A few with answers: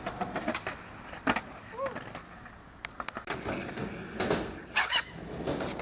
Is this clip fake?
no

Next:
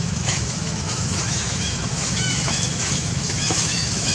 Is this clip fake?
yes